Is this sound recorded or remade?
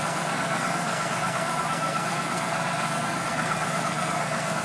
remade